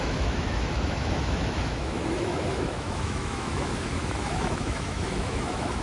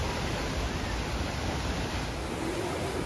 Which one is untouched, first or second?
second